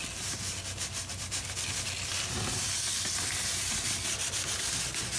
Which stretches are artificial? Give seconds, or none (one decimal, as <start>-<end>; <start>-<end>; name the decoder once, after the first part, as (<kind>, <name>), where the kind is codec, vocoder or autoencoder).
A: none

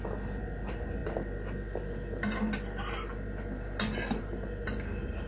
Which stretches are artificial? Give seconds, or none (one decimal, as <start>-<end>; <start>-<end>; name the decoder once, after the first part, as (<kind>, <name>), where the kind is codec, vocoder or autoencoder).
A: none